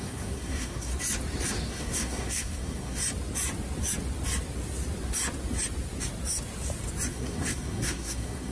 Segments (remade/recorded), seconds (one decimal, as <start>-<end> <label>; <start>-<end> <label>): 0.0-0.9 remade; 0.9-1.7 recorded; 1.7-3.0 remade; 3.0-7.1 recorded; 7.1-8.5 remade